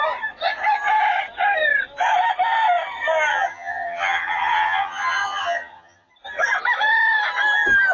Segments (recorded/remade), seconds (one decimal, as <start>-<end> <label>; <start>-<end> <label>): 0.0-3.3 recorded; 3.3-6.1 remade; 6.1-7.9 recorded